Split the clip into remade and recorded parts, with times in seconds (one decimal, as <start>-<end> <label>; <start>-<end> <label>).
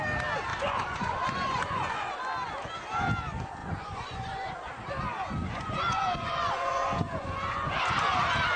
0.0-0.5 recorded; 0.5-2.2 remade; 2.2-3.6 recorded; 3.6-4.5 remade; 4.5-5.4 recorded; 5.4-7.8 remade; 7.8-8.6 recorded